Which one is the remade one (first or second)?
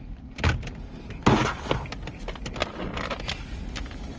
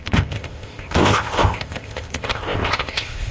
second